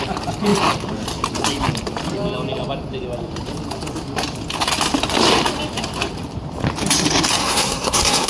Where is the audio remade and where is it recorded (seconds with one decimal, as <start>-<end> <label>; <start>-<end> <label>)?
0.0-7.4 recorded; 7.4-8.3 remade